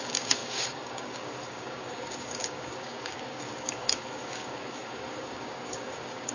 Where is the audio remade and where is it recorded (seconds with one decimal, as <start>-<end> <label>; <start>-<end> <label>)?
0.0-6.3 remade